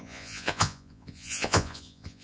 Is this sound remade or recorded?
remade